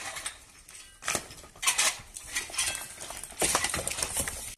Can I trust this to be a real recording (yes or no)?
yes